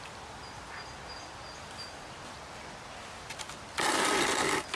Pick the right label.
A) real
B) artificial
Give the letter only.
A